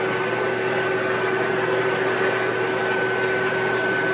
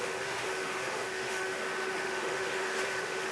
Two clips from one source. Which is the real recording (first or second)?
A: first